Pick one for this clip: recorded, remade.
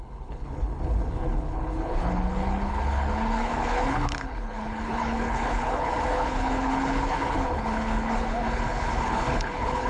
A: remade